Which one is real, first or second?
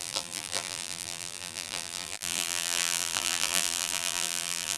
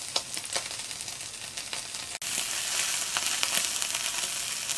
second